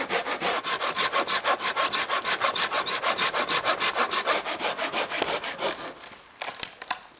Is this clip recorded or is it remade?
recorded